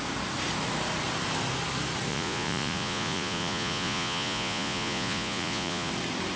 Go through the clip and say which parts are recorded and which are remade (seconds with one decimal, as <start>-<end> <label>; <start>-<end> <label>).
0.0-2.1 recorded; 2.1-5.9 remade; 5.9-6.4 recorded